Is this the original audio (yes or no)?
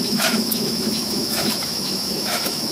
no